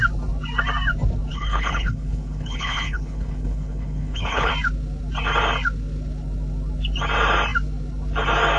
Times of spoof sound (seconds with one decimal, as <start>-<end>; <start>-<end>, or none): 1.3-4.5